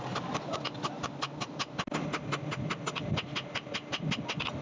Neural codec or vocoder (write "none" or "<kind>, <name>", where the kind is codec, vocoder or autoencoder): none